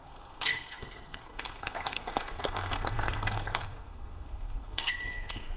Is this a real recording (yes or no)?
no